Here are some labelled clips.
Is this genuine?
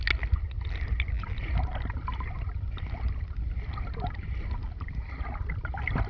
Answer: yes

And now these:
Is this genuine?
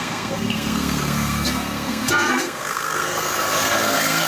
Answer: no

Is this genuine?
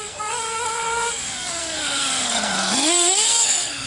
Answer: no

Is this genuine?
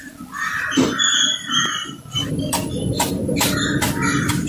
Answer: yes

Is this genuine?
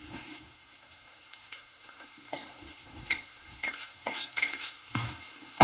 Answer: no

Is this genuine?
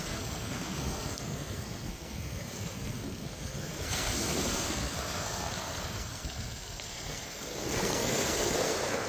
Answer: no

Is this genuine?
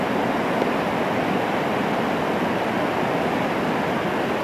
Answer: yes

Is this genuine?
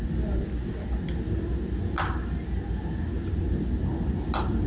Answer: yes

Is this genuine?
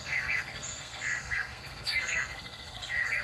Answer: no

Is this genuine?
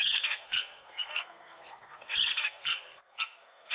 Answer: no